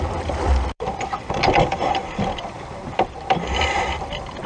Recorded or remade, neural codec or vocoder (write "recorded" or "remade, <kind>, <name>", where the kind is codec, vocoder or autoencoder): remade, vocoder, BigVGAN v2